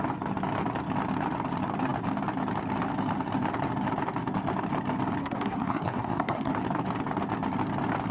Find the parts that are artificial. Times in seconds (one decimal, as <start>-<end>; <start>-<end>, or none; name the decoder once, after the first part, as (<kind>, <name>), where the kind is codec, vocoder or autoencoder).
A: 5.2-6.5 (codec, SNAC)